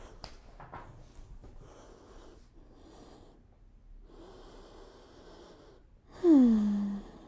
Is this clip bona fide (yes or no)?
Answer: yes